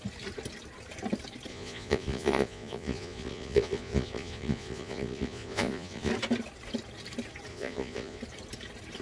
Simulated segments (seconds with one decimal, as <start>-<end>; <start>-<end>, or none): 1.5-6.1; 7.5-8.2